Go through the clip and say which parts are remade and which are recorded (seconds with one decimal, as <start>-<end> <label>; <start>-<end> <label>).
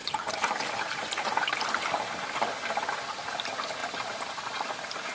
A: 0.0-5.1 recorded